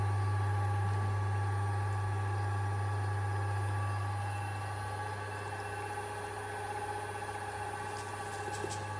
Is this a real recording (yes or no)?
yes